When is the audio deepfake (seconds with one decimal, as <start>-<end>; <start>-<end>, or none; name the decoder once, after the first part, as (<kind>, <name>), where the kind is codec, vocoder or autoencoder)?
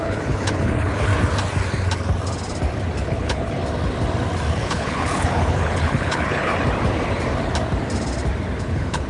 0.0-1.1 (codec, HILCodec); 3.0-3.6; 4.5-6.5; 8.6-9.1